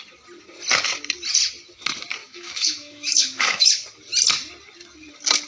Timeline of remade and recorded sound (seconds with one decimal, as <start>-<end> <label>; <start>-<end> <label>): 0.0-2.2 recorded; 2.2-3.7 remade; 3.7-5.5 recorded